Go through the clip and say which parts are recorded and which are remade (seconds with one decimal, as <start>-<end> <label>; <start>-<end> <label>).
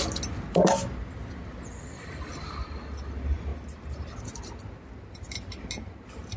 0.0-6.4 recorded